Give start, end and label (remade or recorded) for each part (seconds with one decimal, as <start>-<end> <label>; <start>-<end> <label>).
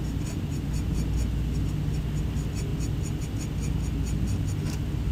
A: 0.0-5.1 recorded